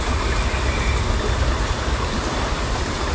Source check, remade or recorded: recorded